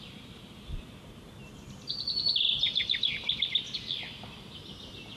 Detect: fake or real real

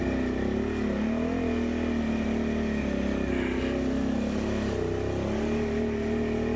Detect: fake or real real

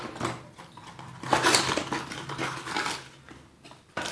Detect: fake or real real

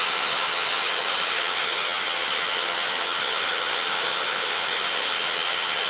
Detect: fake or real fake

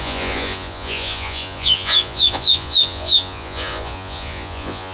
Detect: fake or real fake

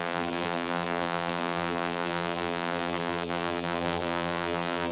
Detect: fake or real fake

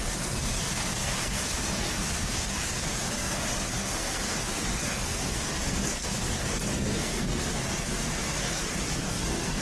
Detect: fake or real fake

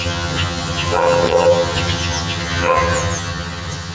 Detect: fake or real fake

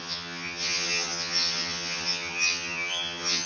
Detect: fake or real fake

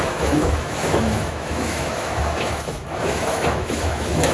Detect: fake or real fake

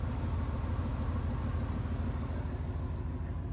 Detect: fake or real real